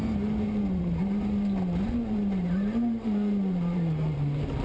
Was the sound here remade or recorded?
remade